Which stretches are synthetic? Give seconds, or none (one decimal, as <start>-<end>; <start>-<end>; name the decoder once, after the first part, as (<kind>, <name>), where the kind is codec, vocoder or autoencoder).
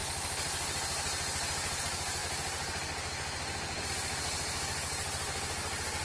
none